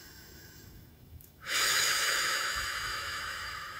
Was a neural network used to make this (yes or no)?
yes